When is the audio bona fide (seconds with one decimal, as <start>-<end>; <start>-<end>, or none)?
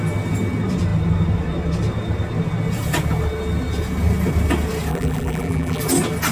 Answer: 0.0-4.9; 5.8-6.3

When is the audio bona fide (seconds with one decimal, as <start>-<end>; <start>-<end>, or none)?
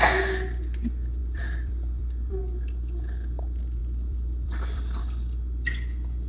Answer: 0.0-1.2; 2.4-3.8; 5.0-6.3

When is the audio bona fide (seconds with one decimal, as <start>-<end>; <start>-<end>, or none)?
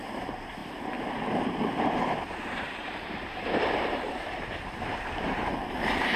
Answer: none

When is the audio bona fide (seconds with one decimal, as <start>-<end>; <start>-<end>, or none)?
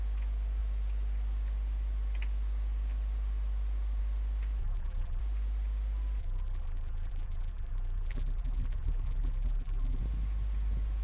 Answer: 0.0-4.6; 5.2-6.2; 10.0-11.0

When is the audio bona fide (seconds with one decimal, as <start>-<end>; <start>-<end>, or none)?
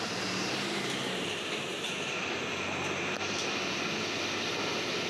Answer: 0.0-5.1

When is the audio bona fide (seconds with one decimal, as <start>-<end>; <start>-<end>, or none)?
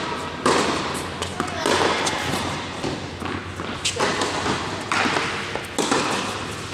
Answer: 0.0-6.7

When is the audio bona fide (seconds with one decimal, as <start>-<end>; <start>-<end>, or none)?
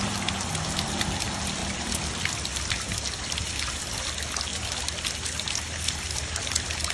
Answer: 4.5-5.1